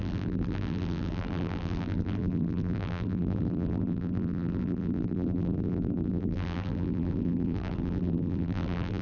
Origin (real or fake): fake